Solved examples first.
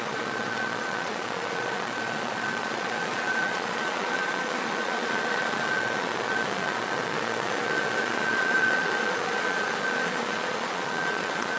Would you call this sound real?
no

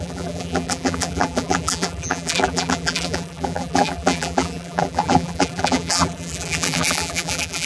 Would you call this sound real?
no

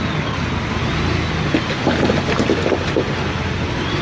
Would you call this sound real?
yes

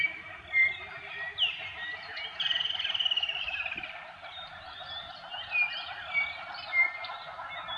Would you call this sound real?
yes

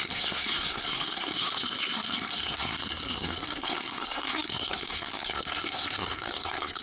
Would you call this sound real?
no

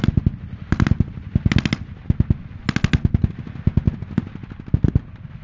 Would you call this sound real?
yes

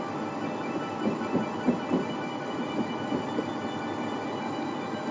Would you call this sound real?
yes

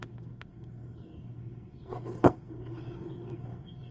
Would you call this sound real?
no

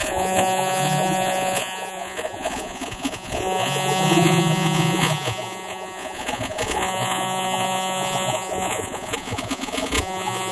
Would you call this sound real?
no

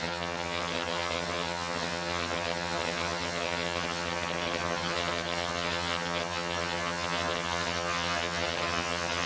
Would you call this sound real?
no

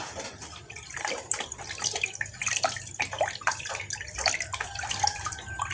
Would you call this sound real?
yes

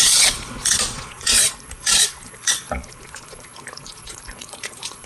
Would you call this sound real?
no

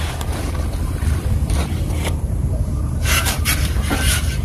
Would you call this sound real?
no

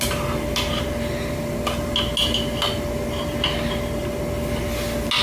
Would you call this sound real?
yes